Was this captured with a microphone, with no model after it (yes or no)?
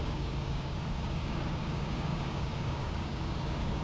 no